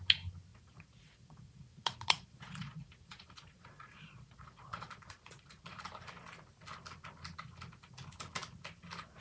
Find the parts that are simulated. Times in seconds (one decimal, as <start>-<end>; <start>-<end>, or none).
0.5-5.8